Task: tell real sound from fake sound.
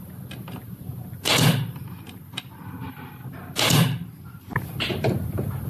real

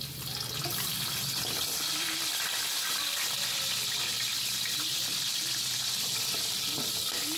fake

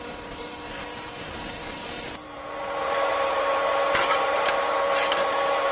fake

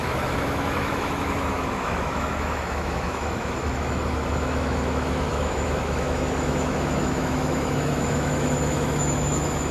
fake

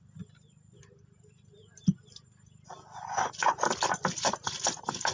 real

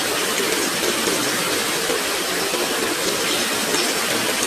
fake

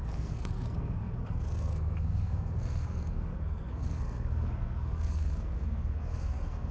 fake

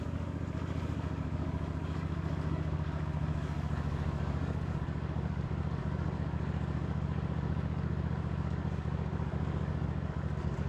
fake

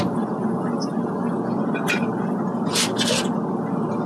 real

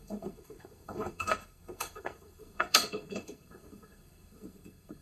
fake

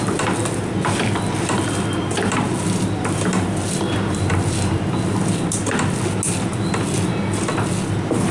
real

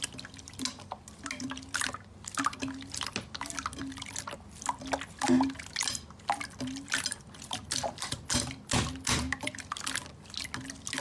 real